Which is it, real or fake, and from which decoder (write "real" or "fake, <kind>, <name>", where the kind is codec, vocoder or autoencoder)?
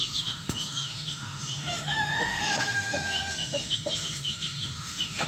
fake, autoencoder, DAC-VAE